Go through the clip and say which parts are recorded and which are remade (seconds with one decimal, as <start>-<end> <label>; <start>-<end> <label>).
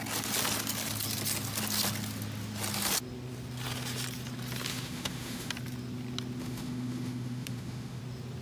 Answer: 0.0-4.7 recorded; 4.7-5.5 remade; 5.5-6.4 recorded; 6.4-8.0 remade; 8.0-8.4 recorded